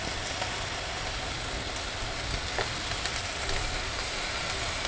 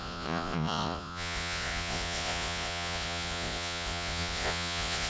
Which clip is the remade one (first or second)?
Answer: second